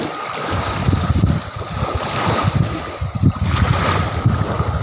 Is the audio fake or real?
real